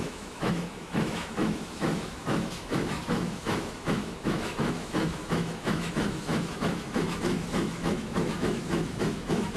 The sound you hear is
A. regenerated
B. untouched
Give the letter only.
A